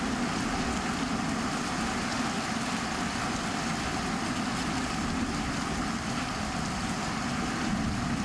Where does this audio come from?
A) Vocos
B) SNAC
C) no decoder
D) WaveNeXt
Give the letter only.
C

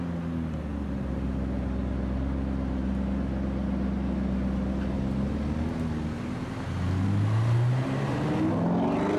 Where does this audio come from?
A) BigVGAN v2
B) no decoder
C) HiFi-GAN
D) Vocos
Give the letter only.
B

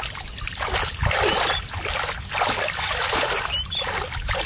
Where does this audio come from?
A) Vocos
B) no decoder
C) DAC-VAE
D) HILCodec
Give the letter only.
B